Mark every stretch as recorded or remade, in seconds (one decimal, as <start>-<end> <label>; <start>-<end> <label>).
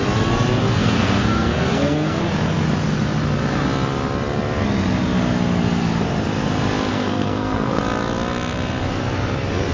0.0-0.7 recorded; 0.7-2.2 remade; 2.2-6.9 recorded; 6.9-7.8 remade; 7.8-9.7 recorded